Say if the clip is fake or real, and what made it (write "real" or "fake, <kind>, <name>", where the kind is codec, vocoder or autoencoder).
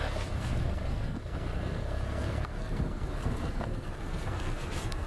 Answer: fake, codec, SNAC